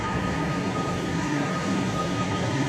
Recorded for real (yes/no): no